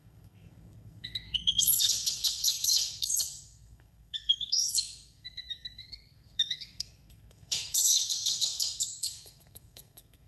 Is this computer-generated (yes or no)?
yes